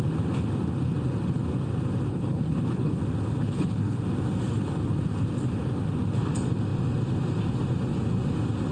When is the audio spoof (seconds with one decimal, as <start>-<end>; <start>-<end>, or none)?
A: 2.1-3.0; 3.4-4.0